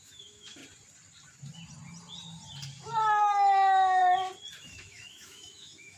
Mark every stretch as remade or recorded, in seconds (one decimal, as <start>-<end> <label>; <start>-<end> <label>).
0.0-0.6 remade; 0.6-3.2 recorded; 3.2-4.0 remade; 4.0-4.6 recorded; 4.6-6.0 remade